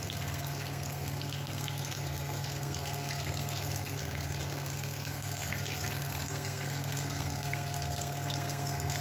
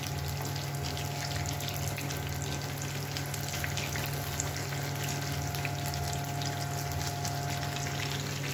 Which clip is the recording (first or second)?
second